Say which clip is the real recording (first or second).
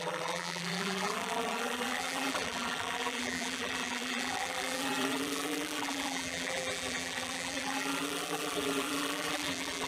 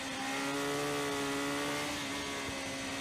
second